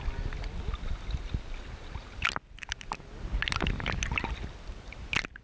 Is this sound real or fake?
real